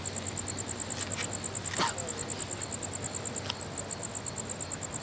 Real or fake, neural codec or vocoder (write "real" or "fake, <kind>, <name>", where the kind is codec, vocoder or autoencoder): real